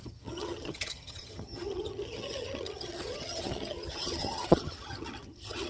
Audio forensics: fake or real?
fake